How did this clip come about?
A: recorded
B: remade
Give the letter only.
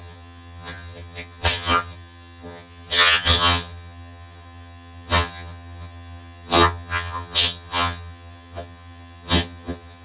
B